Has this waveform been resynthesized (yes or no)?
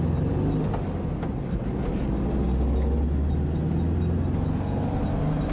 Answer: no